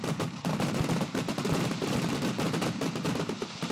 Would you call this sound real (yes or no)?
no